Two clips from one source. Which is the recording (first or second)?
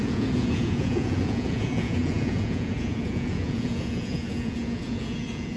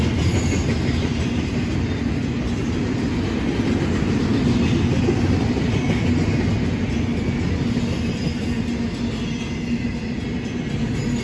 second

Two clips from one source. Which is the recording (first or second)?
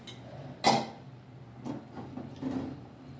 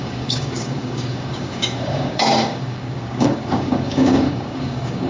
first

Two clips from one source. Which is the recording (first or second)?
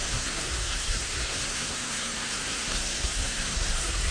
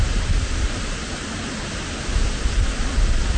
second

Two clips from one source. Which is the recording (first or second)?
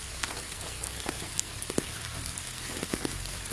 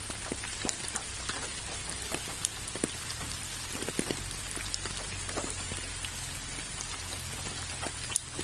second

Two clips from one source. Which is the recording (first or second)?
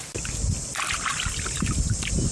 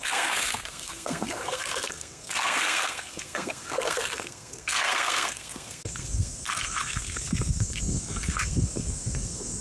first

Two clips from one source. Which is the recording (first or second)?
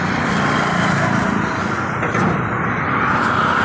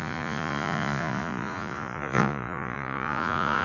first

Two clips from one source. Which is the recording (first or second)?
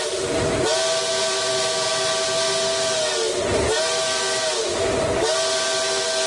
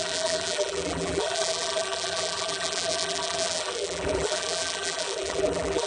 first